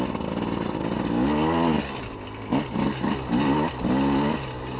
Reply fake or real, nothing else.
real